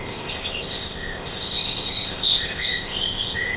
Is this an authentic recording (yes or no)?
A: no